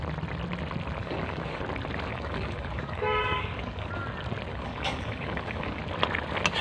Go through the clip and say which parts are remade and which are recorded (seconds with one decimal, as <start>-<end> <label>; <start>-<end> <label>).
0.0-1.0 recorded; 1.0-1.6 remade; 1.6-2.1 recorded; 2.1-3.9 remade; 3.9-4.5 recorded; 4.5-5.8 remade; 5.8-6.6 recorded